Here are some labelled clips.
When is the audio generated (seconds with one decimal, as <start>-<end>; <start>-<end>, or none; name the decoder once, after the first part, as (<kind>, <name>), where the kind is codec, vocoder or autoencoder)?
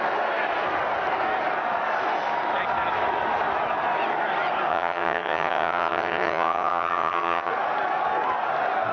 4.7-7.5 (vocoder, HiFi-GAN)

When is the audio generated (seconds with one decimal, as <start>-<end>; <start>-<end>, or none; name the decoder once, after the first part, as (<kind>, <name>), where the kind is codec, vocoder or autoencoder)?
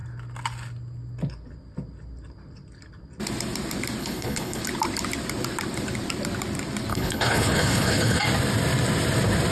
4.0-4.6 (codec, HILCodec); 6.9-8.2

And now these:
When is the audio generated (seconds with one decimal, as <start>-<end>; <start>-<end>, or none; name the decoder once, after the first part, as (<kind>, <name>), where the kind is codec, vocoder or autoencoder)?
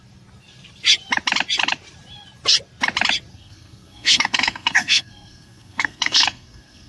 3.3-6.9 (codec, SNAC)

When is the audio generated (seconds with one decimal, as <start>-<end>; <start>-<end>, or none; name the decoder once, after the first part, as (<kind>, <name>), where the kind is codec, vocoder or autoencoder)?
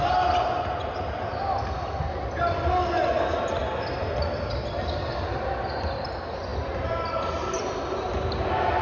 none